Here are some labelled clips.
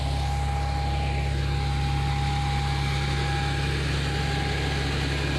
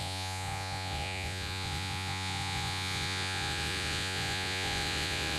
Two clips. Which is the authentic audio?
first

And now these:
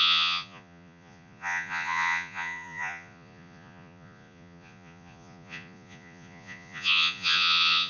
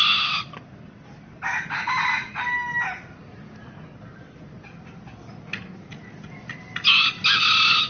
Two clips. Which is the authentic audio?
second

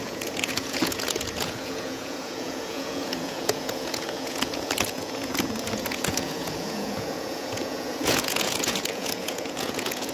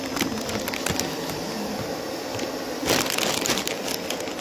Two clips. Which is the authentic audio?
second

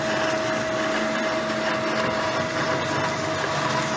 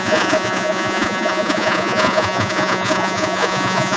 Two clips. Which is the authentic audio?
first